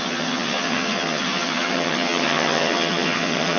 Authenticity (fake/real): fake